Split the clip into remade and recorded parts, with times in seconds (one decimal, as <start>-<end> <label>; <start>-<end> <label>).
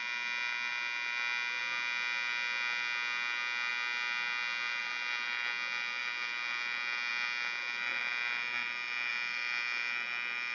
0.0-10.5 recorded